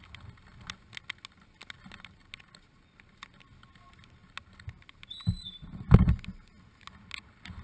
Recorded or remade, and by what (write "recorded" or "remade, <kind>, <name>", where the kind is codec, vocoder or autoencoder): recorded